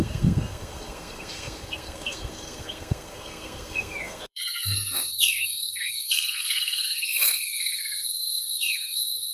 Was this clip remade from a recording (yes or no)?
yes